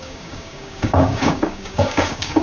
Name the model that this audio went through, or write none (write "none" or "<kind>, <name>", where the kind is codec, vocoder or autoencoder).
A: codec, DAC